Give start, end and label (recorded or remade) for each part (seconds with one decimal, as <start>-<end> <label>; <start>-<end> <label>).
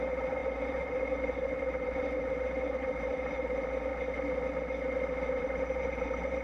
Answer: 0.0-3.9 remade; 3.9-5.4 recorded; 5.4-6.4 remade